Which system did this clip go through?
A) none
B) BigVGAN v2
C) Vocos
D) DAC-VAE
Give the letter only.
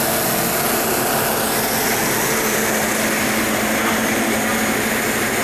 A